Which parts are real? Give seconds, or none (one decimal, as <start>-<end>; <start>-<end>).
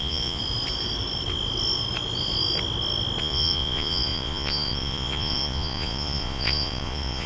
0.4-3.2